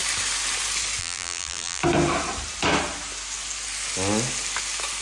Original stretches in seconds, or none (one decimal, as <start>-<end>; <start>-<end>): 0.0-1.0; 1.8-5.0